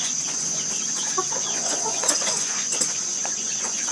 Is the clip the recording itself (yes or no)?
no